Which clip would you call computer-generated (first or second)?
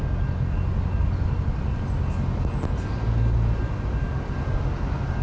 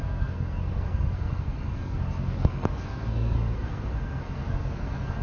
second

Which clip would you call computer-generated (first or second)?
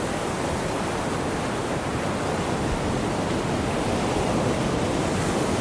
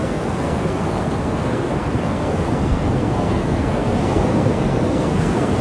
second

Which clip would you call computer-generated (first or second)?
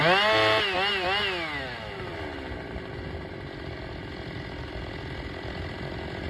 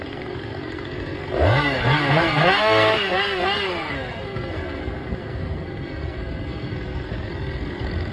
second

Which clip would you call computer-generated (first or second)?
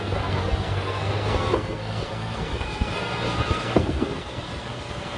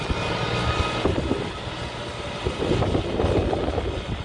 first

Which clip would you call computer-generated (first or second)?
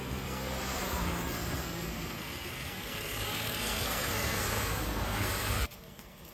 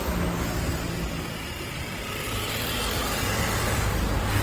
first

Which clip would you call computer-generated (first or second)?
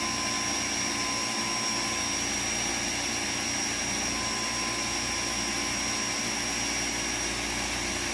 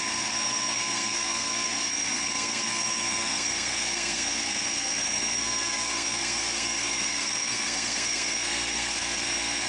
second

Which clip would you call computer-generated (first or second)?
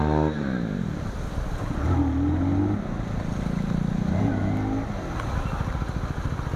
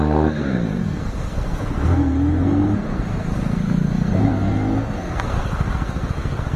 second